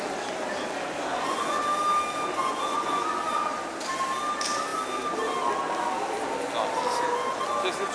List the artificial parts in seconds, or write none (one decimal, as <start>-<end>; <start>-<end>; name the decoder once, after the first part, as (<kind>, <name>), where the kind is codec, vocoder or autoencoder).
1.1-1.6 (vocoder, Vocos); 2.4-3.2